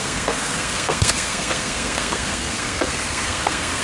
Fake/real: fake